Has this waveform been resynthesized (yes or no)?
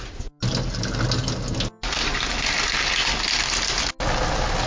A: no